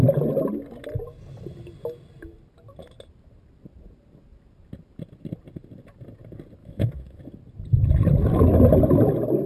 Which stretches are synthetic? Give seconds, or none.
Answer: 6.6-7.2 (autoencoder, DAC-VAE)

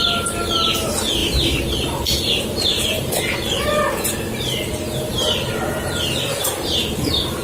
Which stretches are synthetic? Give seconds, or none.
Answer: none

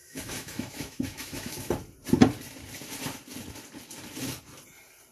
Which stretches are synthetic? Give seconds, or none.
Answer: 0.0-1.7 (autoencoder, DAC-VAE)

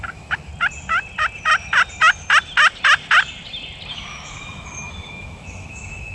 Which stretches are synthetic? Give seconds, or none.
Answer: 0.0-0.5 (autoencoder, DAC-VAE); 3.9-6.1

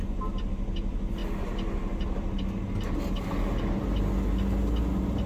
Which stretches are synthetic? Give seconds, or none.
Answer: none

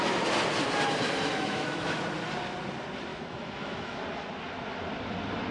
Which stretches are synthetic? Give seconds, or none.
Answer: 1.3-2.0 (autoencoder, DAC-VAE); 3.1-4.0

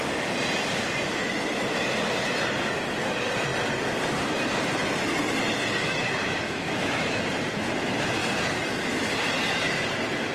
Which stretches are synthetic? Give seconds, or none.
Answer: 5.8-7.2 (autoencoder, DAC-VAE)

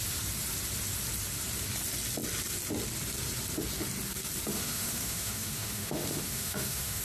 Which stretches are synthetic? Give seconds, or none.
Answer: 4.5-7.0 (autoencoder, DAC-VAE)